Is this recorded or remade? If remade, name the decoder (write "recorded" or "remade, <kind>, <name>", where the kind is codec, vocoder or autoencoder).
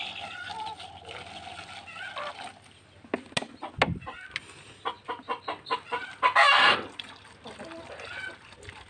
recorded